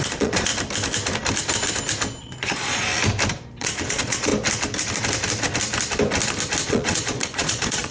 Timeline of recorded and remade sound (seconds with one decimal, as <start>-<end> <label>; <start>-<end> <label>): 0.0-0.5 remade; 0.5-2.2 recorded; 2.2-2.9 remade; 2.9-3.6 recorded; 3.6-4.3 remade; 4.3-6.7 recorded; 6.7-7.9 remade